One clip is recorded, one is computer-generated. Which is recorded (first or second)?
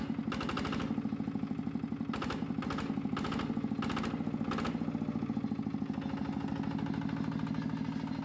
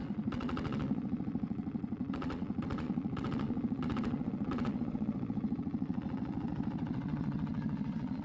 first